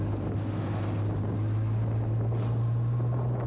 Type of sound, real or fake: real